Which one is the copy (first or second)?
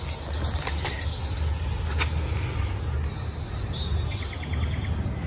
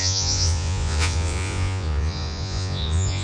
second